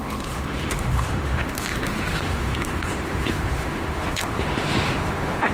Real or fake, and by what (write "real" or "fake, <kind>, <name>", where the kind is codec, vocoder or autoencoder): fake, autoencoder, DAC-VAE